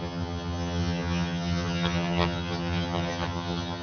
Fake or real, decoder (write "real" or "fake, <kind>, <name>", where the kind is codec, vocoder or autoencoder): fake, vocoder, HiFi-GAN